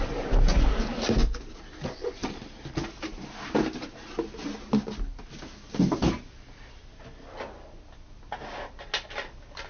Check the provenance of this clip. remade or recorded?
recorded